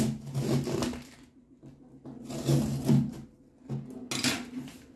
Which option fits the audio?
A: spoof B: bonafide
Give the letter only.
B